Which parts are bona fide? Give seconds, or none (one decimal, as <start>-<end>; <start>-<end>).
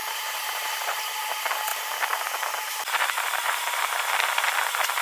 1.2-1.7; 4.1-5.0